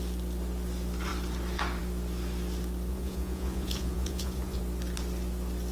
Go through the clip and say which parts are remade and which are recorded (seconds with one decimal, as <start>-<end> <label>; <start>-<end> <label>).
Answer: 0.0-2.9 recorded; 2.9-4.6 remade; 4.6-5.7 recorded